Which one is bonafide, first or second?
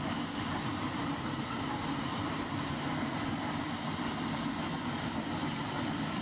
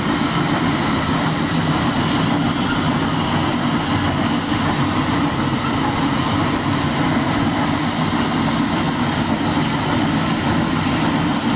second